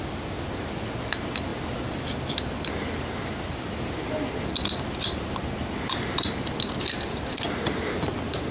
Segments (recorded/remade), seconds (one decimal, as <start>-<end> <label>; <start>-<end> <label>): 0.0-8.5 recorded